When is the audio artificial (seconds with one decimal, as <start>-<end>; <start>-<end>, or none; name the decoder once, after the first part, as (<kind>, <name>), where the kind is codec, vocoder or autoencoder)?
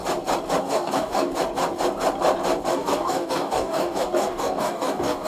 0.6-1.3 (codec, DAC); 2.7-5.3